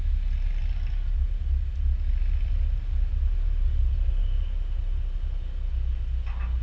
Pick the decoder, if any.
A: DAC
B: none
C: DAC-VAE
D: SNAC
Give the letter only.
B